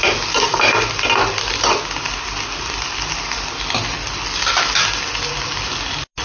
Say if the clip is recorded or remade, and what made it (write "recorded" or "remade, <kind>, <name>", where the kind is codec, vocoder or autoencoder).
recorded